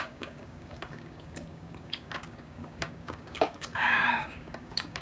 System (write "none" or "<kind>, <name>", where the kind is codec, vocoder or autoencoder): codec, DAC